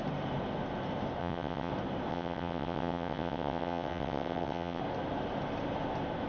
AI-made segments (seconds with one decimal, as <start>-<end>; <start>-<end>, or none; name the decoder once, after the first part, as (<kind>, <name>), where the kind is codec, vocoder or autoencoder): 1.2-1.7 (vocoder, WaveNeXt); 2.1-4.8